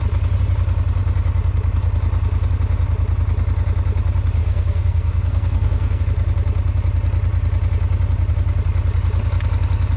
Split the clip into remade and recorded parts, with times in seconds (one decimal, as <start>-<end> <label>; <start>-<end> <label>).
0.0-4.4 recorded; 4.4-6.0 remade; 6.0-10.0 recorded